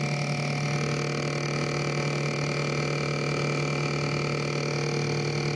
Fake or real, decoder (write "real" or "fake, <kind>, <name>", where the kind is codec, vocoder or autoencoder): real